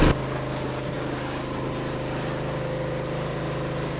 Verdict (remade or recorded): recorded